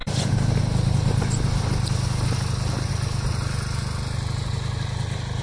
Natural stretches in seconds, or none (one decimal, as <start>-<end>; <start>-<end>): 0.0-5.4